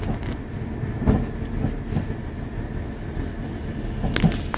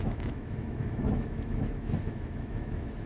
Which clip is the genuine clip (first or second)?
first